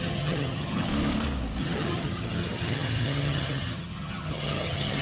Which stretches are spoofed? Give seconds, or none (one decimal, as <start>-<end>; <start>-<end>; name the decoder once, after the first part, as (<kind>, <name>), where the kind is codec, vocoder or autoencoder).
0.0-0.9 (vocoder, HiFi-GAN); 1.6-5.0